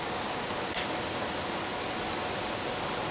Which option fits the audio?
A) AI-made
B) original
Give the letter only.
B